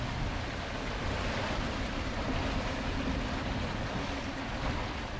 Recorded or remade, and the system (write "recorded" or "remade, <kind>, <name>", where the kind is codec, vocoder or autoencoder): recorded